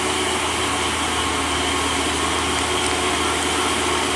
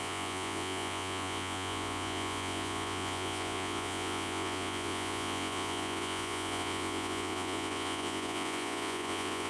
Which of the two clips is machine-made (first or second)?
second